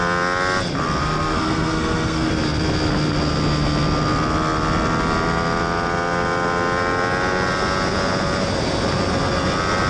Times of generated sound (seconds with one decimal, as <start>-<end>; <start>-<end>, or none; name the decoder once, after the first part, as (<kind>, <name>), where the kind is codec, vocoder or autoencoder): 1.0-2.3 (codec, SNAC)